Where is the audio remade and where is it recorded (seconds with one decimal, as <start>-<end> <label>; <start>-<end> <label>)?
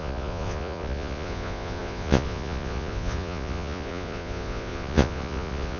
0.0-5.8 remade